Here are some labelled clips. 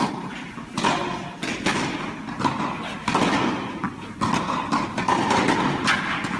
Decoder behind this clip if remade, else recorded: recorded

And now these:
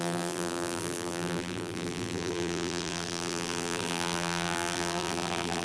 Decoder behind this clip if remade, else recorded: remade, vocoder, BigVGAN v2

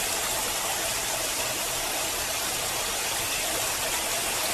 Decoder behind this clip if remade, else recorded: recorded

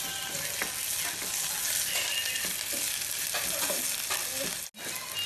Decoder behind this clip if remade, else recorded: recorded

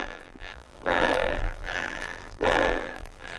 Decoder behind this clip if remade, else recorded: remade, vocoder, BigVGAN v2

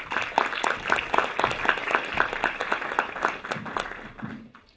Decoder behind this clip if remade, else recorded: recorded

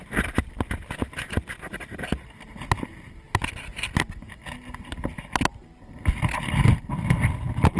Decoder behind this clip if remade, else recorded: recorded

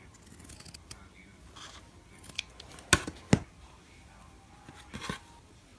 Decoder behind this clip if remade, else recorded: recorded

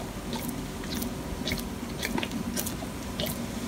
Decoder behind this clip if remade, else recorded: recorded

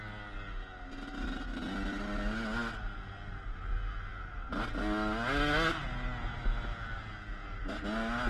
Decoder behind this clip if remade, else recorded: recorded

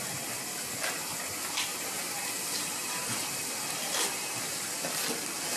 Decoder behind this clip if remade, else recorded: remade, vocoder, BigVGAN v2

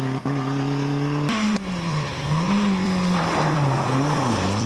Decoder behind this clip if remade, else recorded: remade, vocoder, BigVGAN v2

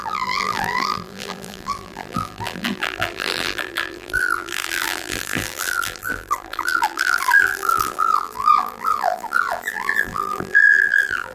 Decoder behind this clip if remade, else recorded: remade, vocoder, BigVGAN v2